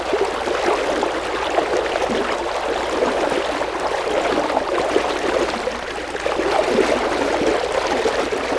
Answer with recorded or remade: recorded